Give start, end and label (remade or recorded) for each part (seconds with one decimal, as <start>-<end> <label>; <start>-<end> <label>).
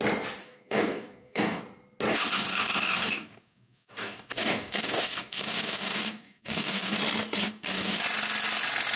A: 0.0-0.4 recorded; 0.4-1.6 remade; 1.6-2.1 recorded; 2.1-7.0 remade; 7.0-7.4 recorded; 7.4-8.0 remade; 8.0-9.0 recorded